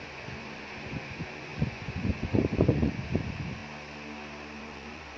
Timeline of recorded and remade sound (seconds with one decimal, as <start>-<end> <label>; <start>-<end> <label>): 0.0-3.6 remade; 3.6-4.6 recorded; 4.6-5.2 remade